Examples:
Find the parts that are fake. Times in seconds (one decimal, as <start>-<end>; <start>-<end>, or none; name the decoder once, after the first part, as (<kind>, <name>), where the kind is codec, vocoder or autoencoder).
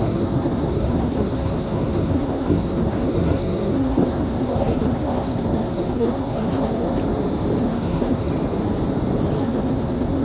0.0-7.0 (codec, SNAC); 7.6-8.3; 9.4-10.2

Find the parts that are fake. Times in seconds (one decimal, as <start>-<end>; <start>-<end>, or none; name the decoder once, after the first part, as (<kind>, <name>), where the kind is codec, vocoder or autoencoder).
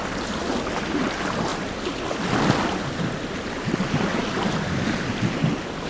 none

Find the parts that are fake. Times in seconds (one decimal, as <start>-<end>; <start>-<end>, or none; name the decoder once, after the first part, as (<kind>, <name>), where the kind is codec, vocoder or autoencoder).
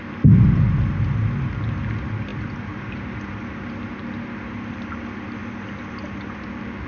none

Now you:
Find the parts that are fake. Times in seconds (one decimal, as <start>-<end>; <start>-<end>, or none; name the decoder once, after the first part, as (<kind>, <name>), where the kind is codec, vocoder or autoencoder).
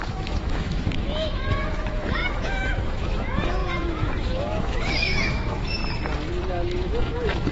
0.0-5.8 (autoencoder, DAC-VAE); 6.5-7.5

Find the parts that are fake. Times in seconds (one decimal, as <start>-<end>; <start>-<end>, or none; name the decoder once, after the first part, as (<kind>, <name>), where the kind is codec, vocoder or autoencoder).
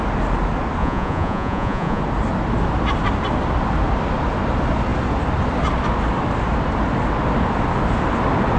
0.8-2.0 (vocoder, Vocos)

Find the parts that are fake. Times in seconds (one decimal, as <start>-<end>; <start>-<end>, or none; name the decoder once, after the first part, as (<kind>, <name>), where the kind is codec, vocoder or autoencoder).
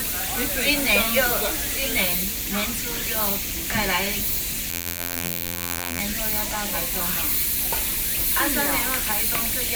4.7-6.0 (vocoder, BigVGAN v2)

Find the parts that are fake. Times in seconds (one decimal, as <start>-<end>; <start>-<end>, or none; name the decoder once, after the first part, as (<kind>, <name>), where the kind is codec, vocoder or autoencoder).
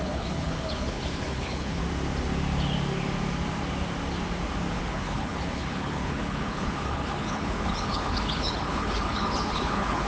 0.0-1.8 (codec, HILCodec); 4.7-10.1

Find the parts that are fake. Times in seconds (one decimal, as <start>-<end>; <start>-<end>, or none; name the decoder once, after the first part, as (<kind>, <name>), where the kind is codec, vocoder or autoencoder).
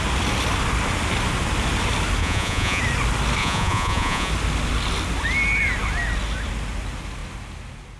2.2-2.8 (vocoder, Vocos); 3.4-4.3